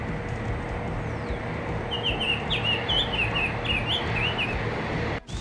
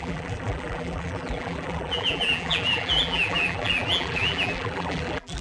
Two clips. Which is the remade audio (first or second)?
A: second